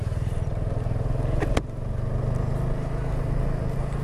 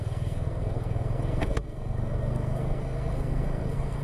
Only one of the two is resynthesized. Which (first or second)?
second